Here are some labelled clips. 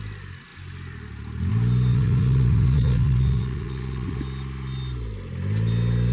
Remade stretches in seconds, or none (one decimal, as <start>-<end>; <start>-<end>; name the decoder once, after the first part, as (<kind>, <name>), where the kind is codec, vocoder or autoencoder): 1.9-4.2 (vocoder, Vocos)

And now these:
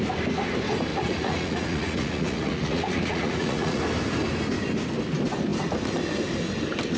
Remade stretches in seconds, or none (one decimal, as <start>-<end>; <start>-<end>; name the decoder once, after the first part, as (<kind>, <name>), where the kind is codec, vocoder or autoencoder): 0.9-3.8 (vocoder, Vocos)

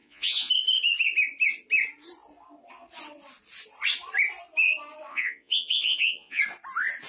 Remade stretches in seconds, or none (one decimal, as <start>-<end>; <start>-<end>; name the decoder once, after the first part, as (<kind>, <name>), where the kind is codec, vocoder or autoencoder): 0.0-0.5 (vocoder, Vocos); 5.1-6.4

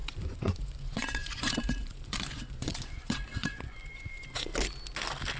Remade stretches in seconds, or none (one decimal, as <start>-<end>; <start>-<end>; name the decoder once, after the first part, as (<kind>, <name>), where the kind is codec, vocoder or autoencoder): 0.0-4.5 (vocoder, Vocos)

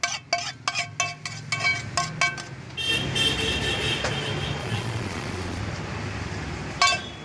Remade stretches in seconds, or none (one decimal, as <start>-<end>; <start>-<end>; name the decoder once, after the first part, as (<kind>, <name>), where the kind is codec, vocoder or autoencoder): 4.6-5.6 (vocoder, Vocos)

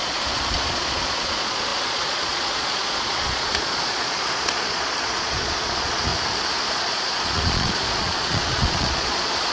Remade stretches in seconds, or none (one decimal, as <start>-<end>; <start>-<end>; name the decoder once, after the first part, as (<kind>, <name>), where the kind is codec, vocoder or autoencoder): 0.0-6.1 (vocoder, Vocos); 6.7-9.5

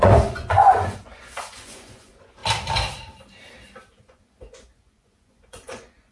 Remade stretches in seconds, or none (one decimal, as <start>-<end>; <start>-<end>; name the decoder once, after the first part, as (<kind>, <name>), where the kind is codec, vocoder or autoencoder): 0.0-2.4 (vocoder, Vocos); 3.9-6.1

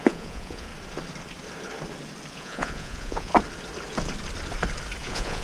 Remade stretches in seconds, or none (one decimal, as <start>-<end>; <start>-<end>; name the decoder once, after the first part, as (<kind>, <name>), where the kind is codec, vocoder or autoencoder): 0.0-0.7 (vocoder, Vocos); 2.3-3.3; 5.0-5.4